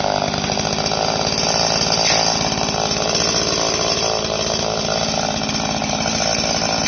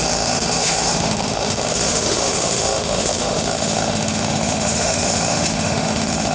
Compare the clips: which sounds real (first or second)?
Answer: first